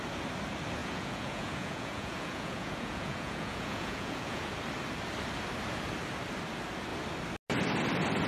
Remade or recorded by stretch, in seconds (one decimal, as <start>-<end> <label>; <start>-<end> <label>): 0.0-0.8 recorded; 0.8-4.5 remade; 4.5-8.3 recorded